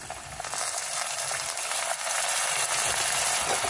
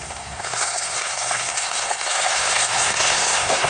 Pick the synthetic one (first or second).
second